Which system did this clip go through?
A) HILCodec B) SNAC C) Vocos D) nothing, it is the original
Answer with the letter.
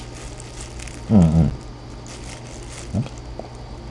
D